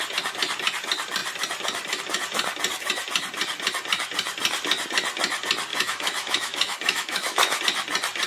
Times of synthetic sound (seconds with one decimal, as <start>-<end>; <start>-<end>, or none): 5.7-7.6